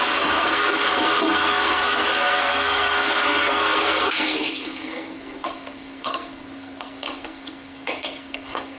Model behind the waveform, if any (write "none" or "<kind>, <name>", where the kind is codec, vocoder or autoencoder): codec, SNAC